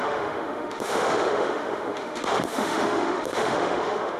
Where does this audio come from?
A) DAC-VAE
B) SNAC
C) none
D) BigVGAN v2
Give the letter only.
A